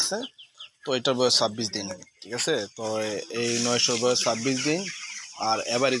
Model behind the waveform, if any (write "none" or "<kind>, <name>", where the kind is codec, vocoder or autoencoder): none